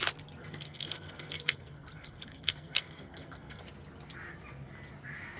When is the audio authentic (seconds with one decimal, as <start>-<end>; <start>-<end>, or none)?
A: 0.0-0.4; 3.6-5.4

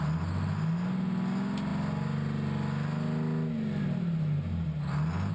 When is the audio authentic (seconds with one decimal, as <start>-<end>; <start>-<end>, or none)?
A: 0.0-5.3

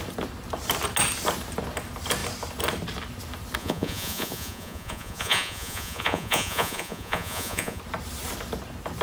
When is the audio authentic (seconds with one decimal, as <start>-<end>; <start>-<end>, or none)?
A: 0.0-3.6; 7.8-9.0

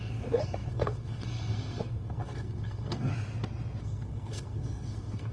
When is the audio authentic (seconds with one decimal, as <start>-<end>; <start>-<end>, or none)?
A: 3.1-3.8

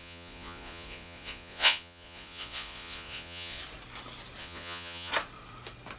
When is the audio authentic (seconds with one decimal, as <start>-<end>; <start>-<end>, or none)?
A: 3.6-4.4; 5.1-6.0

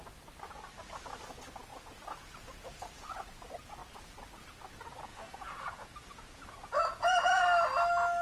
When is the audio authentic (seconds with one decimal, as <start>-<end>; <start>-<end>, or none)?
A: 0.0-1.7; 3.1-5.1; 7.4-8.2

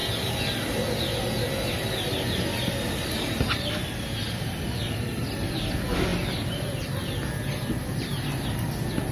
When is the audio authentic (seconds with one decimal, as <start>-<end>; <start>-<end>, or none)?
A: 0.0-9.1

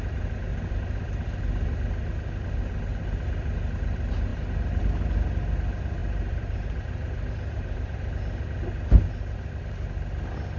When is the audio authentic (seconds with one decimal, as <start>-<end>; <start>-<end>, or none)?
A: 0.0-0.5; 1.4-6.0; 8.0-10.6